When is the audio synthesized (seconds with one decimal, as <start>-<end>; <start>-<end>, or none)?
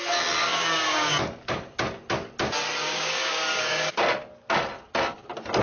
0.4-1.1; 2.8-3.9